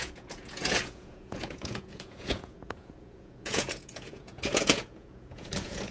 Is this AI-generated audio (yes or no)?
yes